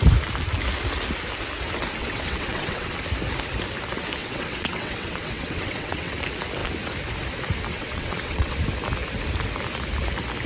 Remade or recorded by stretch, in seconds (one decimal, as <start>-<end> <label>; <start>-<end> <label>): 0.0-2.0 recorded; 2.0-2.9 remade; 2.9-4.2 recorded; 4.2-6.1 remade; 6.1-7.7 recorded; 7.7-8.6 remade; 8.6-10.5 recorded